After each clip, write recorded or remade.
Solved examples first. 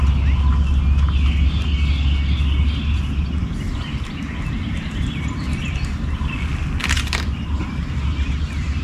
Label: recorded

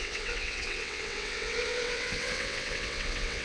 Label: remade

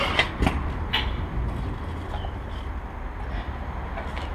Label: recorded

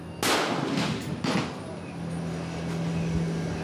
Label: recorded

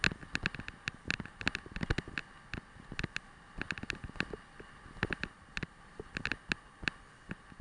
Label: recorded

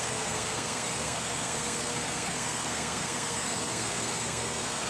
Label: remade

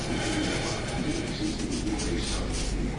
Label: recorded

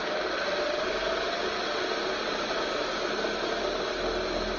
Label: recorded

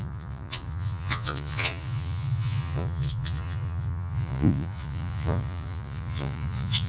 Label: remade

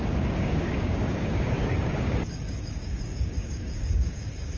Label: remade